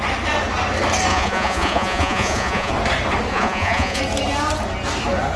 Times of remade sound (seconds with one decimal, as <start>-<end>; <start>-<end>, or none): 1.1-2.7; 3.3-4.0